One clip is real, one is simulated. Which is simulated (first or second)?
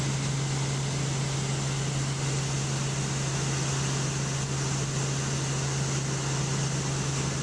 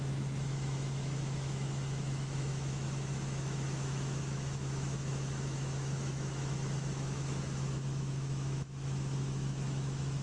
second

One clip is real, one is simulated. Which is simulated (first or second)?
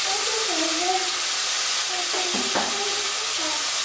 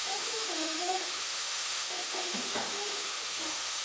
second